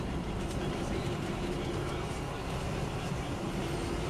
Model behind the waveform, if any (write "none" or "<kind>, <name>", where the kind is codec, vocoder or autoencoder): none